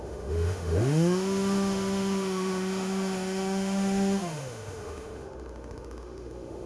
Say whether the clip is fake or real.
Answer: fake